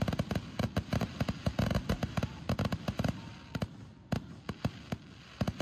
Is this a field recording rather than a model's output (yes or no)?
yes